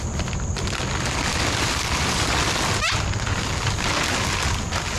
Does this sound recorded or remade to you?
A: recorded